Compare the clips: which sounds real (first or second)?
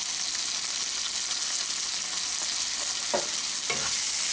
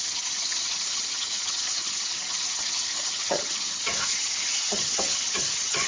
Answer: first